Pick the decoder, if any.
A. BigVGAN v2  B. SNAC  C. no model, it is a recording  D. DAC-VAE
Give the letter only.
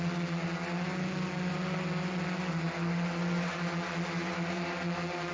C